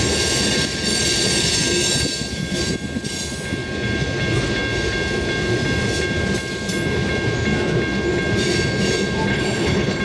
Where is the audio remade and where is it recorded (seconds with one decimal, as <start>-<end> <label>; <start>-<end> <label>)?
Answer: 0.0-9.3 recorded; 9.3-10.0 remade